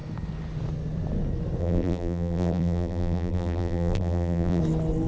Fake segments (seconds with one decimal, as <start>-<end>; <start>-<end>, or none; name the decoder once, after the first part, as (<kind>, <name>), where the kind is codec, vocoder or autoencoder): 1.6-4.6 (vocoder, BigVGAN v2)